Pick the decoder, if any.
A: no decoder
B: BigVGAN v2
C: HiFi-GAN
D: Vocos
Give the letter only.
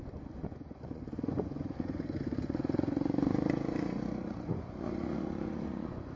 D